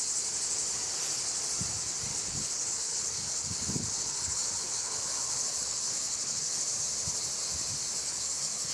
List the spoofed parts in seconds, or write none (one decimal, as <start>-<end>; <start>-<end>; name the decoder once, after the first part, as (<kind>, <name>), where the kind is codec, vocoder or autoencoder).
2.1-6.7 (codec, HILCodec); 8.0-8.7

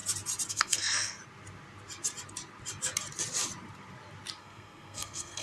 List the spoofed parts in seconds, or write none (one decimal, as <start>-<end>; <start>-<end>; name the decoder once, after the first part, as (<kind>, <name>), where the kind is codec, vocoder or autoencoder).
0.5-1.2 (codec, SNAC); 4.4-5.4

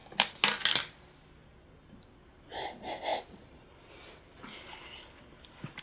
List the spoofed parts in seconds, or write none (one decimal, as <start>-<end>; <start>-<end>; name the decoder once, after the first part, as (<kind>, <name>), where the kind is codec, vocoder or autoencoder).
none

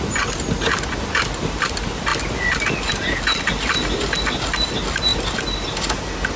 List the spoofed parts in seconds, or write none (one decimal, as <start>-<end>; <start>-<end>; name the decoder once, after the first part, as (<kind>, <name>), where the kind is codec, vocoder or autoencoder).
none

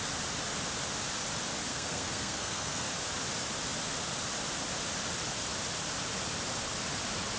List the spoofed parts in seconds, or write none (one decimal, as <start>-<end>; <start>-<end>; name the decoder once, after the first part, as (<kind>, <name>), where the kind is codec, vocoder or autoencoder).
1.7-2.9 (codec, SNAC)